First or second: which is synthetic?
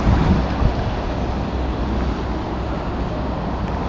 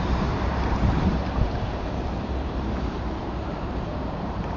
second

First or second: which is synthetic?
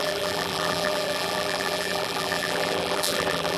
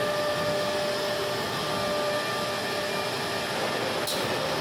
first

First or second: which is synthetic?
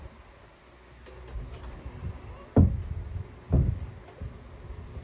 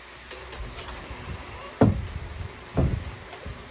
second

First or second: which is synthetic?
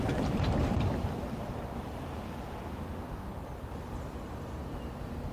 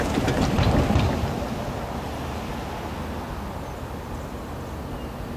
first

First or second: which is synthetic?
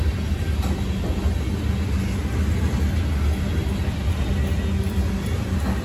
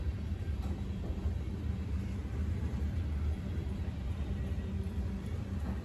second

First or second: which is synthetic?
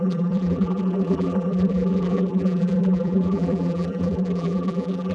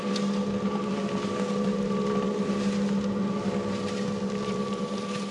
first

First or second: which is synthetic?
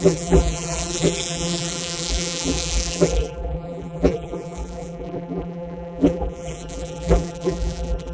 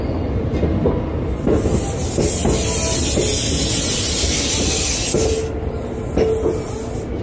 first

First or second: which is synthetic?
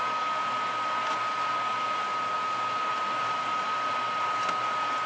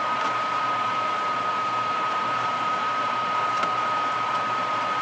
second